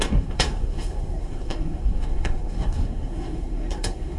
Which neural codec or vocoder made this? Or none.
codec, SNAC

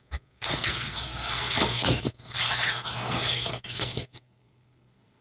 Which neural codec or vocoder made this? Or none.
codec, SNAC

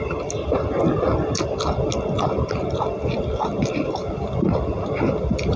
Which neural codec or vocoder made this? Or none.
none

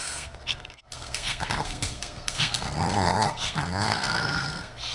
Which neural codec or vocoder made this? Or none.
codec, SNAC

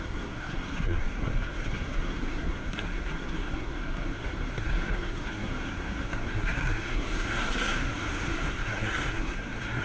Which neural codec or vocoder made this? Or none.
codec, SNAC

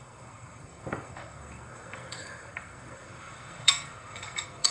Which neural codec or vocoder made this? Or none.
codec, SNAC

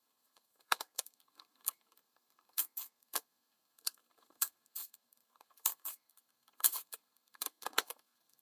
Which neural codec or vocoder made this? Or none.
codec, SNAC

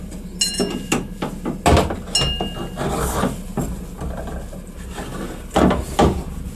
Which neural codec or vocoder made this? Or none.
none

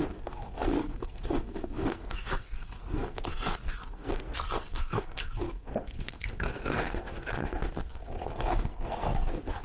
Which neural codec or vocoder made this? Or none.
codec, SNAC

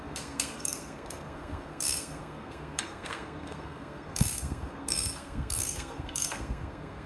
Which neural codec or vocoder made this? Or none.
codec, SNAC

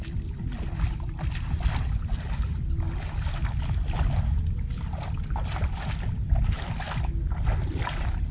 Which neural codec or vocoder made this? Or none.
none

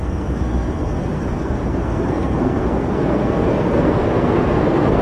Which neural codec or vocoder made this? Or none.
codec, SNAC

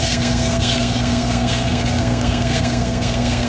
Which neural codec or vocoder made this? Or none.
codec, SNAC